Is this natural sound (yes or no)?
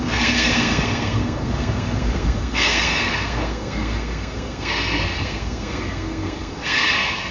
no